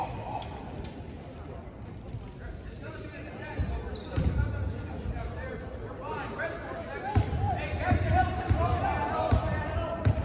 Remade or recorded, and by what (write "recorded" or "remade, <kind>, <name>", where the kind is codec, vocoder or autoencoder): remade, vocoder, BigVGAN v2